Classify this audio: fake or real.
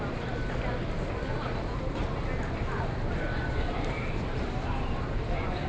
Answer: real